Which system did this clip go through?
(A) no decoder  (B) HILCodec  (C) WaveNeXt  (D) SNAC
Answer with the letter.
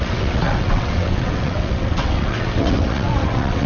C